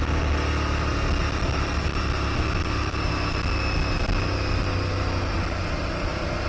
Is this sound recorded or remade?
recorded